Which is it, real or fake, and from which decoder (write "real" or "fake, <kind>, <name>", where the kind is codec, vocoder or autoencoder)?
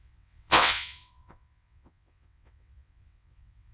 fake, vocoder, WaveNeXt